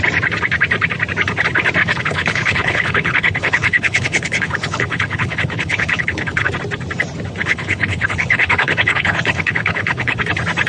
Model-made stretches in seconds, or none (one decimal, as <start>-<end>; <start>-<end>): 1.8-6.5; 7.4-10.2

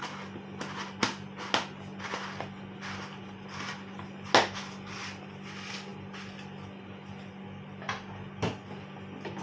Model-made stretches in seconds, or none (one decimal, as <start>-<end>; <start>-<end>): none

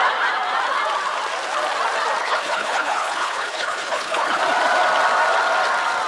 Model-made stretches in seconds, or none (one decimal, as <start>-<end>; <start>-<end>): 2.2-4.4

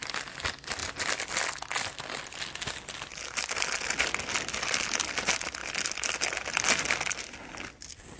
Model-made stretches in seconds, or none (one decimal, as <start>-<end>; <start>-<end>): none